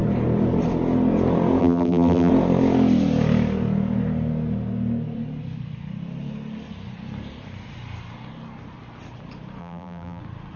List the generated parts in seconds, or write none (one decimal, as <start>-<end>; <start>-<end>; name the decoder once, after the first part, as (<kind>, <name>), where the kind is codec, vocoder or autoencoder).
1.6-2.3 (vocoder, BigVGAN v2); 9.6-10.2